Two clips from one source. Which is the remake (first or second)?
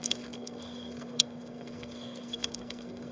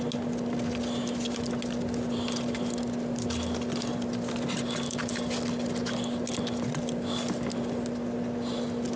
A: first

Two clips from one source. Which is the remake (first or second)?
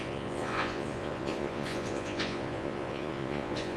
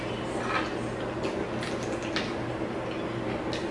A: first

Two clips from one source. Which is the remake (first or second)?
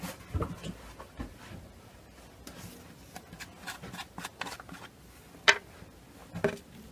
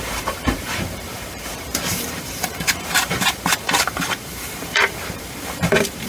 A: second